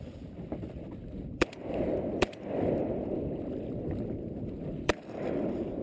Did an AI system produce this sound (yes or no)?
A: yes